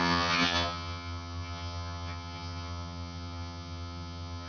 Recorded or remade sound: remade